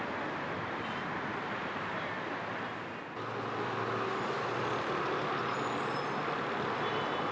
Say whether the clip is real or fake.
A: real